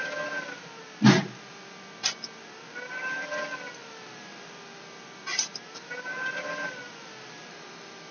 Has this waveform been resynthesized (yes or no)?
no